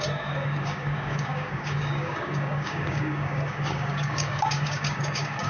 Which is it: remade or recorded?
remade